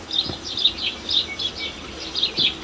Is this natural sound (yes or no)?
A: yes